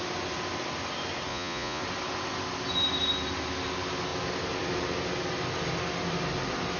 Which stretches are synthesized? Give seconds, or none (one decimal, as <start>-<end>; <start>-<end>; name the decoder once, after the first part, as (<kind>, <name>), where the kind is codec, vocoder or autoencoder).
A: 1.3-1.8 (vocoder, Vocos)